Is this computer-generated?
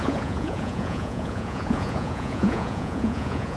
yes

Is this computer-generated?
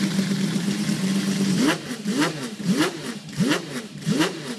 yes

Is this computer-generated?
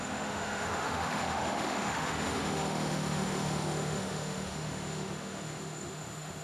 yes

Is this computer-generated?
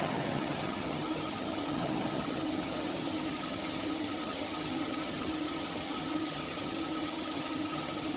yes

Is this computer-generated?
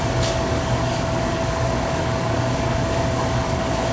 yes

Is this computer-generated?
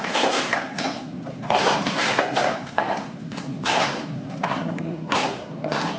yes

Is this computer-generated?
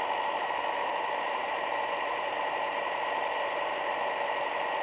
no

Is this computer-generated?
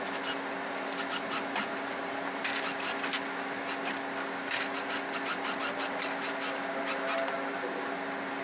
no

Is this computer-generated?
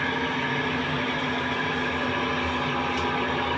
no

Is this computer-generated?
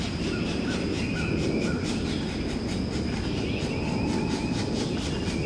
no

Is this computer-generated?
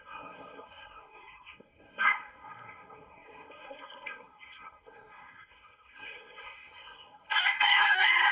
yes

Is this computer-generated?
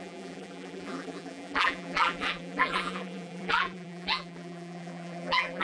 yes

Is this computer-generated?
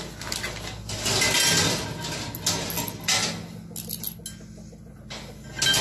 no